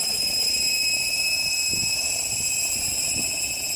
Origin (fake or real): real